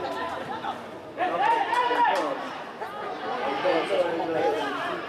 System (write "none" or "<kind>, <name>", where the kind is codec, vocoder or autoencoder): vocoder, BigVGAN v2